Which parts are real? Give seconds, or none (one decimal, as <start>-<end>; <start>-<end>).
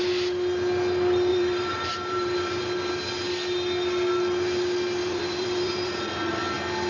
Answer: 0.0-1.3; 2.6-5.0; 5.9-6.9